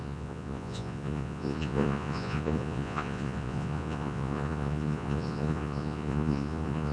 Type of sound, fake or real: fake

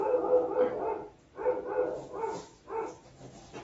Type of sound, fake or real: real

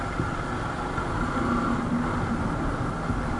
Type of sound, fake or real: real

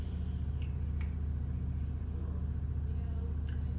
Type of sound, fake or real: real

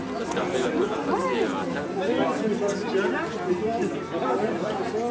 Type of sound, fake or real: real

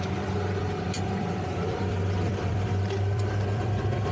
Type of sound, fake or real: fake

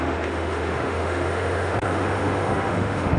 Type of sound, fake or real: fake